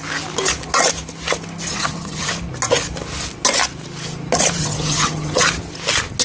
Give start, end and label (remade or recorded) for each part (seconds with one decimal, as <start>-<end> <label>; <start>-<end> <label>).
0.0-1.7 recorded; 1.7-2.3 remade; 2.3-4.6 recorded; 4.6-5.4 remade; 5.4-6.2 recorded